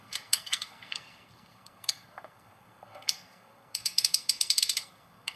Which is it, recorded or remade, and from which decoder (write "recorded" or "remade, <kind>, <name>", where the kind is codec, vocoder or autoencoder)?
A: remade, codec, SNAC